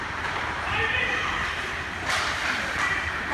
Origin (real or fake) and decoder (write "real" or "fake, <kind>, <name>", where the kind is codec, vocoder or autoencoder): fake, vocoder, BigVGAN v2